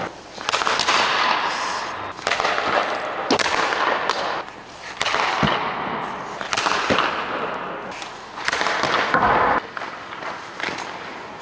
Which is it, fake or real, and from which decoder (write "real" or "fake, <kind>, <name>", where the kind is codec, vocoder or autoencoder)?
real